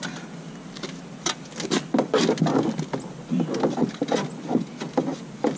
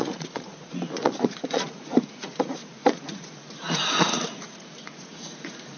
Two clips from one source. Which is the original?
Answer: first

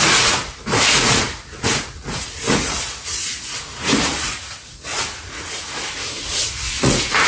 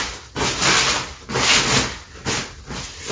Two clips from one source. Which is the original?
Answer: second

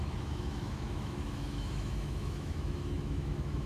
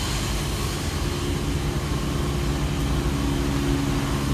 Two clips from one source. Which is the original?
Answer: second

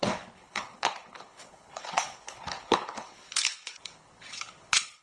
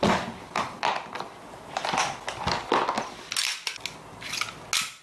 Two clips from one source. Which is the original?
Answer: second